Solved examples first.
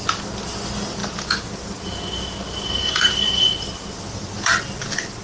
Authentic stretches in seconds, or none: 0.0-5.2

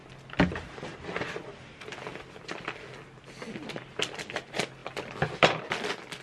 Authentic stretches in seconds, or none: 0.0-6.2

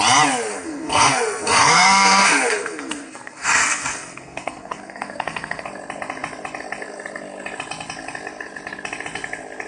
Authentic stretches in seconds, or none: 0.0-0.5; 5.6-9.7

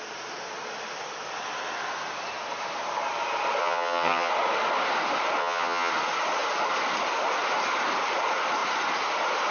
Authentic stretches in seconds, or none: 0.0-3.6; 4.3-5.4; 5.9-9.5

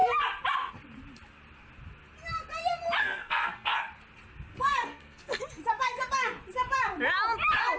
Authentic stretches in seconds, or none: 0.0-3.0; 3.8-4.5; 5.4-7.8

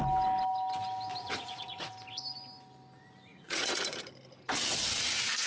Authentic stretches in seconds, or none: 0.0-1.1; 1.9-3.3; 4.0-5.5

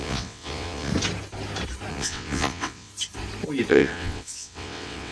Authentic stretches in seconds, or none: 0.9-1.9; 2.9-3.7